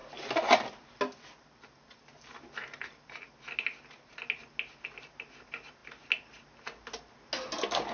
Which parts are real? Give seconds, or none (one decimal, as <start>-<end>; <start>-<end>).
0.0-7.9